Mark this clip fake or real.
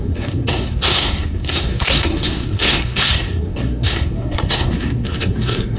fake